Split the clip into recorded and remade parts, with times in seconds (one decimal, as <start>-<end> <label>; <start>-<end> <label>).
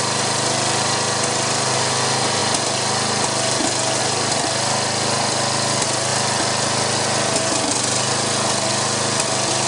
0.0-2.4 remade; 2.4-4.0 recorded; 4.0-6.1 remade; 6.1-8.7 recorded; 8.7-9.7 remade